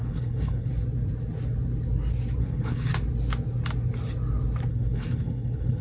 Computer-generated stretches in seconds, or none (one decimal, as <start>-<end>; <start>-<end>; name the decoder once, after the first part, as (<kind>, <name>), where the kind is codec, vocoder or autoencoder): 0.0-0.7 (codec, HILCodec); 2.4-2.9; 4.7-5.8